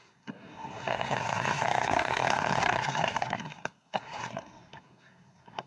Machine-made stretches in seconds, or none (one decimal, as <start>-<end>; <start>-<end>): 0.0-5.7